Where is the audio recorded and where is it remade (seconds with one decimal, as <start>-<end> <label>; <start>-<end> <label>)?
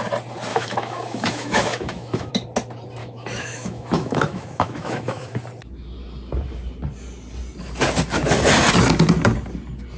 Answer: 0.0-0.5 recorded; 0.5-2.3 remade; 2.3-3.0 recorded; 3.0-5.4 remade; 5.4-10.0 recorded